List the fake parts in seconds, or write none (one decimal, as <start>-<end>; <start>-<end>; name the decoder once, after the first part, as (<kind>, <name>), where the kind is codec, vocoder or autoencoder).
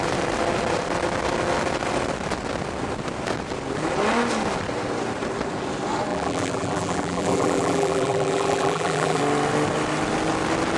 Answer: 6.1-9.2 (vocoder, BigVGAN v2)